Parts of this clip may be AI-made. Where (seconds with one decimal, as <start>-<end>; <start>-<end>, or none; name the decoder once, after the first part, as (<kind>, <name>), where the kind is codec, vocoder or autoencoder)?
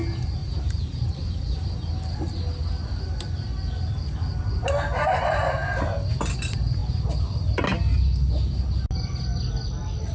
0.4-1.9 (vocoder, BigVGAN v2)